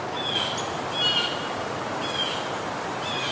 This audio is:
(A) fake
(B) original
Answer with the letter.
B